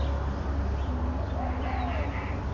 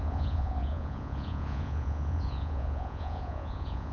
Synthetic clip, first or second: second